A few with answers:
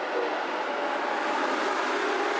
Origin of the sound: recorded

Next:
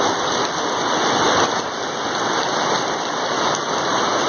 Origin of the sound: recorded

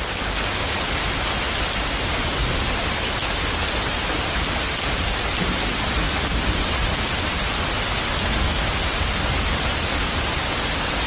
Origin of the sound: recorded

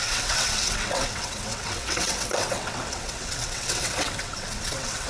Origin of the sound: remade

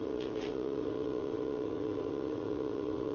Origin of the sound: remade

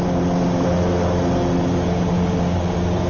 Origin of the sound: recorded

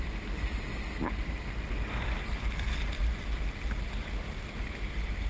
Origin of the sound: recorded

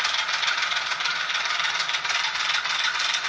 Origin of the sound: recorded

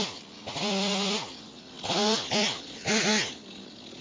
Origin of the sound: recorded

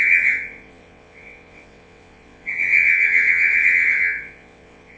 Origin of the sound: remade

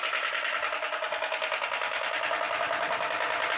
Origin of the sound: recorded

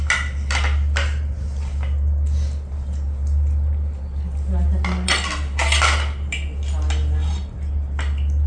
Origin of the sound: recorded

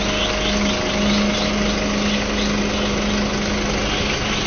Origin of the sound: recorded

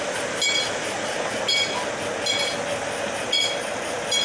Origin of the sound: recorded